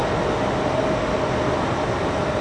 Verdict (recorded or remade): recorded